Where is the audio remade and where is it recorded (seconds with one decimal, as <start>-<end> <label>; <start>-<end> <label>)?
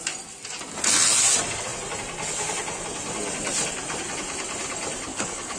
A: 0.0-5.1 recorded; 5.1-5.6 remade